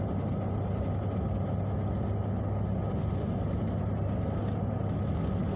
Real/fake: real